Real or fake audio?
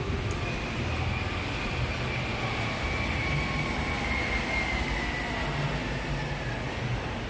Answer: real